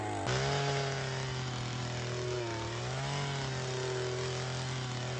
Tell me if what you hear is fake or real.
real